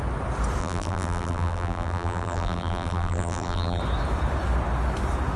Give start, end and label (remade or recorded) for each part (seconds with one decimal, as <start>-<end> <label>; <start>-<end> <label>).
0.0-0.6 recorded; 0.6-3.8 remade; 3.8-5.4 recorded